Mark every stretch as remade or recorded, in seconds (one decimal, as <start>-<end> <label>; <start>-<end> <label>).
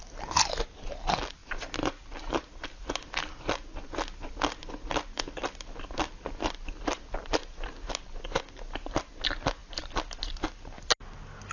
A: 0.0-7.4 recorded; 7.4-7.9 remade; 7.9-11.5 recorded